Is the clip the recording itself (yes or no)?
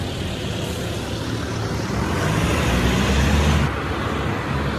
yes